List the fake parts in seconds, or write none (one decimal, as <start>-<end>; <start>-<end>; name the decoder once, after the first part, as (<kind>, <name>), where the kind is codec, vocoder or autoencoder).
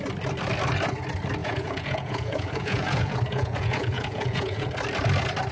1.4-4.7 (vocoder, Vocos)